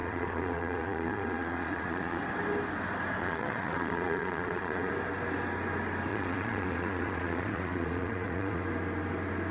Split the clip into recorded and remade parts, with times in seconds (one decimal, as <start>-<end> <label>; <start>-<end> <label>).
0.0-2.2 remade; 2.2-3.2 recorded; 3.2-4.9 remade; 4.9-6.1 recorded; 6.1-8.6 remade; 8.6-9.5 recorded